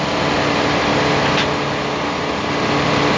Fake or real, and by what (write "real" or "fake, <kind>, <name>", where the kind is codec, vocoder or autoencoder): real